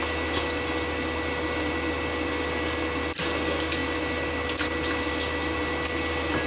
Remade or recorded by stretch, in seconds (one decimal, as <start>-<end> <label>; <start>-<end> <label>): 0.0-6.5 recorded